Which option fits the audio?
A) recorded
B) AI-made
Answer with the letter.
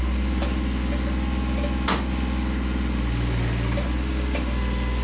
A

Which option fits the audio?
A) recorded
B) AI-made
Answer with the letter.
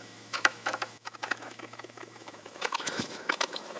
B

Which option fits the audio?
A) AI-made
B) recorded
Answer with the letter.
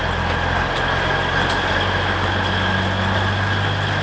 B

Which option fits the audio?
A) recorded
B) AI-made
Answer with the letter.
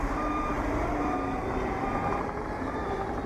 B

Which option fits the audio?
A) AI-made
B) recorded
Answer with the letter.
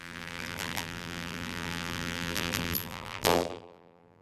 A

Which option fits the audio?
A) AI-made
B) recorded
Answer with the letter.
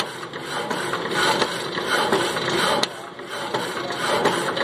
B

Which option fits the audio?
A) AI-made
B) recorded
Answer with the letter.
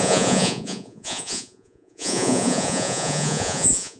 A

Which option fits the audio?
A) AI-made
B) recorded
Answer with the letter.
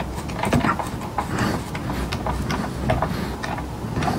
B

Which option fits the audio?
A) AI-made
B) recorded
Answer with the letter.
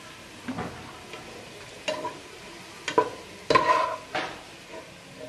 B